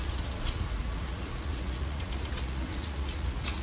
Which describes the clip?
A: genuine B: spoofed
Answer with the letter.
B